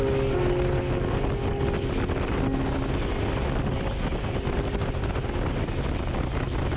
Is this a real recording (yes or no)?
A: yes